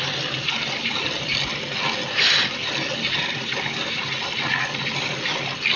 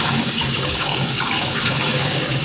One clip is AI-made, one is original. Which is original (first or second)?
first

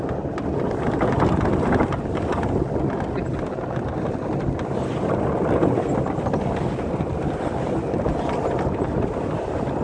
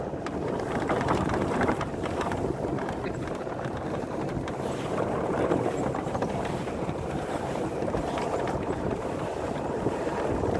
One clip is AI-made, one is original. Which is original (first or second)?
first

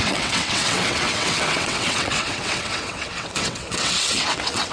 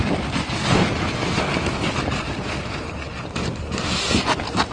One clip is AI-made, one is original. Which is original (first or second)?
second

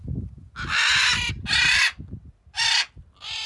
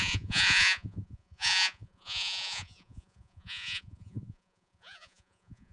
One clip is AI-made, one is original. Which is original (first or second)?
first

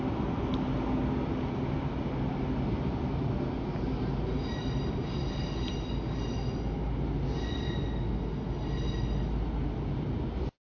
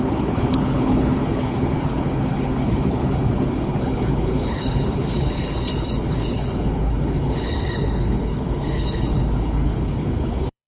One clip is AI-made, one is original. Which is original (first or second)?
first